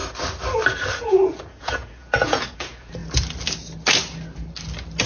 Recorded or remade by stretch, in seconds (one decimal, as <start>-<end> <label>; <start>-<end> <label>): 0.0-1.0 recorded; 1.0-3.0 remade; 3.0-5.1 recorded